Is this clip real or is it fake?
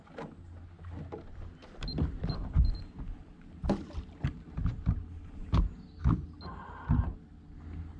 real